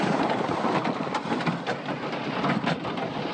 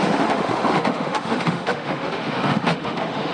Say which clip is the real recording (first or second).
first